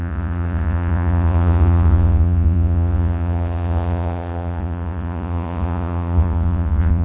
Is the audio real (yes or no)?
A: no